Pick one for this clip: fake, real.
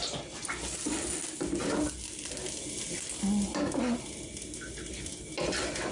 real